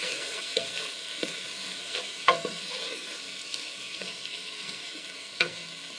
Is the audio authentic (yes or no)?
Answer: no